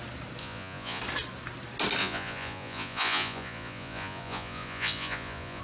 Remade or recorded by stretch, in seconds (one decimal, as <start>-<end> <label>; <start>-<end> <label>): 0.0-0.4 recorded; 0.4-1.0 remade; 1.0-2.0 recorded; 2.0-5.6 remade